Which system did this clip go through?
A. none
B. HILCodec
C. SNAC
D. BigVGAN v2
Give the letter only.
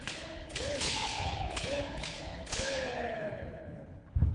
B